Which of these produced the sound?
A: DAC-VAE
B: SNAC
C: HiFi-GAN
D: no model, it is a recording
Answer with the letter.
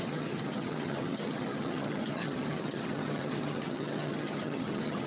C